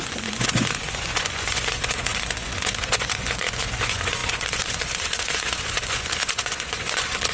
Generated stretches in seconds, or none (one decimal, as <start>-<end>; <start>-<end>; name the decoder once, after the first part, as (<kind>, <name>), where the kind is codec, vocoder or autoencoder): 0.0-7.3 (vocoder, Vocos)